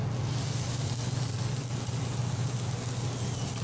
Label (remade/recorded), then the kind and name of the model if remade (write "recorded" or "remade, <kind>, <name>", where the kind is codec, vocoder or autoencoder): recorded